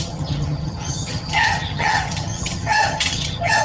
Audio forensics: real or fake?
fake